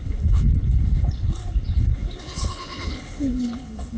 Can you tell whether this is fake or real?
fake